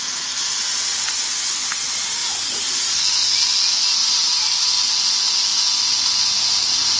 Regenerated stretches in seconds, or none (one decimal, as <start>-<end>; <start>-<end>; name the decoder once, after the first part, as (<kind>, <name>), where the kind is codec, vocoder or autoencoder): 2.2-3.0 (vocoder, BigVGAN v2); 4.0-4.7